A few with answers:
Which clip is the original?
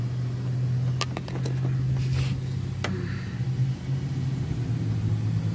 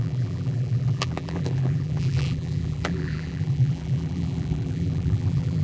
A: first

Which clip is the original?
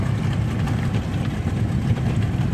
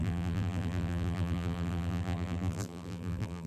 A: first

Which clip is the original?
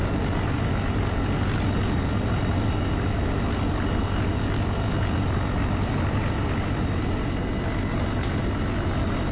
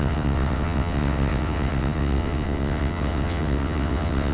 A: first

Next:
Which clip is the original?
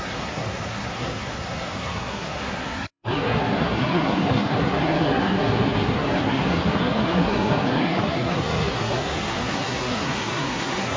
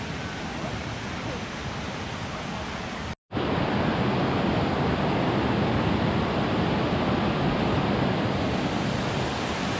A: second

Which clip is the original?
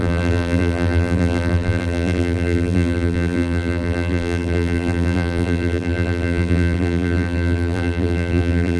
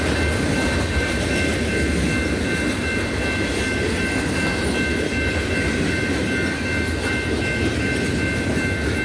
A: second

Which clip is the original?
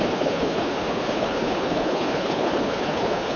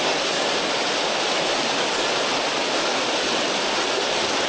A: second